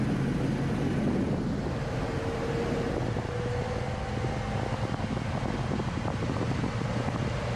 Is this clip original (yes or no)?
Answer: yes